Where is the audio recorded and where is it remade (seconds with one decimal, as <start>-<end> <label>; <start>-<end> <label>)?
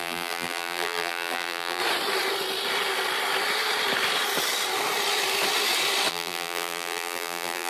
0.0-1.8 remade; 1.8-6.1 recorded; 6.1-7.7 remade